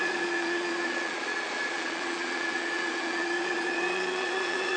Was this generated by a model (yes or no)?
yes